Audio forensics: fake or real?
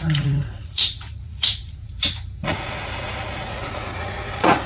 fake